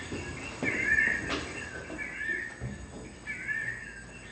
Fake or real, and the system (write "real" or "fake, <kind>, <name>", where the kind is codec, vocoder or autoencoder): real